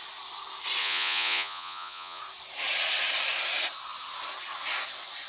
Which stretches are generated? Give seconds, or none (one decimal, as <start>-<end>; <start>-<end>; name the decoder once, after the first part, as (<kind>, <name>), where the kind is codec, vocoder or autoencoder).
0.8-2.2 (vocoder, Vocos)